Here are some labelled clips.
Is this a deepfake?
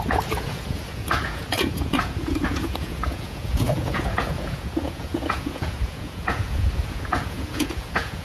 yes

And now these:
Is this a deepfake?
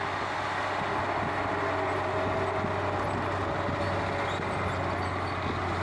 no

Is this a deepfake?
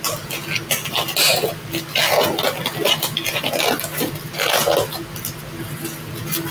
no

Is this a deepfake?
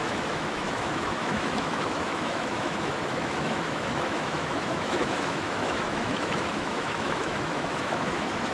yes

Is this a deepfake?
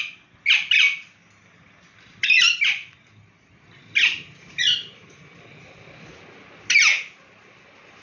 no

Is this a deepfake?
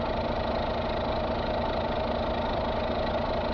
no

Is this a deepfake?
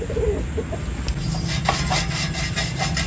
no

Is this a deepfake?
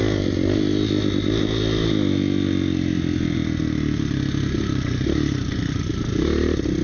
no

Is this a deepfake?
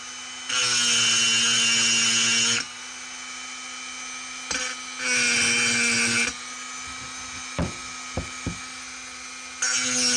no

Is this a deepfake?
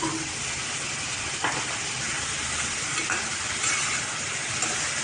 no